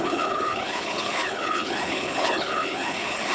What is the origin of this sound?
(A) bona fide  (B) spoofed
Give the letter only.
B